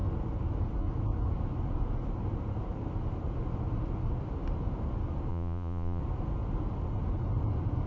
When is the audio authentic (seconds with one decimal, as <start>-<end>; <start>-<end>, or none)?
0.0-5.3; 6.0-7.9